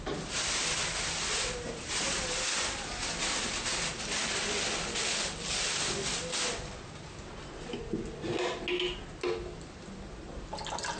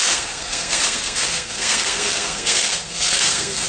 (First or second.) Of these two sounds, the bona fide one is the first